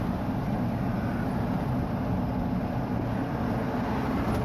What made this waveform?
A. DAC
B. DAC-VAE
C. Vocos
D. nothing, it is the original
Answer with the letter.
D